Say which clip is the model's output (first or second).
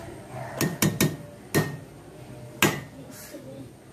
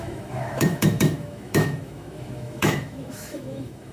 second